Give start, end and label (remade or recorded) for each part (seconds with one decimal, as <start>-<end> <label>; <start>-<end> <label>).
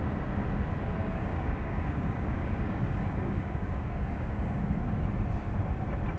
0.0-1.0 recorded; 1.0-4.6 remade; 4.6-6.2 recorded